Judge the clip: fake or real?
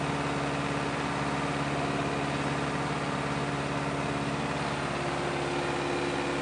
real